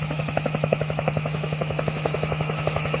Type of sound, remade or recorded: remade